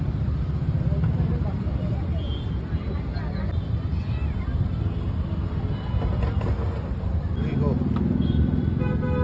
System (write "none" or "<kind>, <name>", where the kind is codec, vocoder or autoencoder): none